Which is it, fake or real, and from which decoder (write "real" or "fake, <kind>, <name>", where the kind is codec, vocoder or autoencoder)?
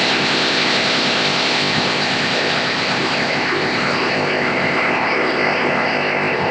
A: fake, codec, ZipCodec